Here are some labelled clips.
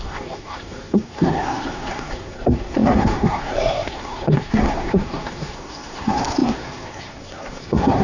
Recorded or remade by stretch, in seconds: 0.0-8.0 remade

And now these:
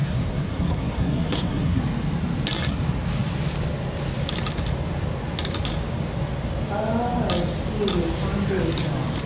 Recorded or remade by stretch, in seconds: 0.0-1.8 remade; 1.8-9.3 recorded

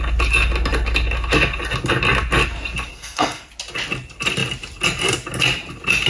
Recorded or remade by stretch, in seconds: 0.0-2.9 recorded; 2.9-3.5 remade; 3.5-6.1 recorded

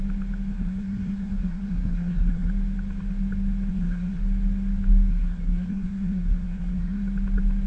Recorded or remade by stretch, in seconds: 0.0-0.5 recorded; 0.5-2.5 remade; 2.5-3.7 recorded; 3.7-4.2 remade; 4.2-5.1 recorded; 5.1-7.0 remade; 7.0-7.7 recorded

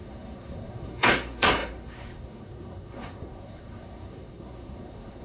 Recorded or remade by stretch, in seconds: 0.0-5.2 remade

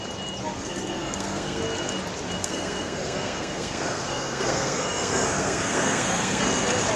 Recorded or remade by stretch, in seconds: 0.0-0.4 recorded; 0.4-1.6 remade; 1.6-2.4 recorded; 2.4-6.4 remade; 6.4-7.0 recorded